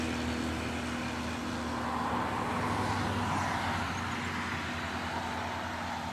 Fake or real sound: real